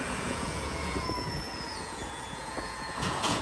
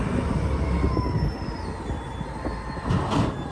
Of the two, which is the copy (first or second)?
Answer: first